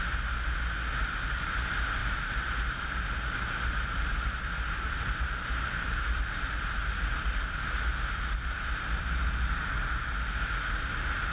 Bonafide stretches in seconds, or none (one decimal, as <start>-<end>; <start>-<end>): 0.0-11.3